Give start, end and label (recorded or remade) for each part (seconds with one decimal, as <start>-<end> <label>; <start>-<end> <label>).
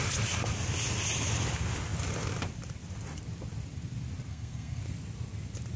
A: 0.0-4.3 recorded; 4.3-4.8 remade; 4.8-5.8 recorded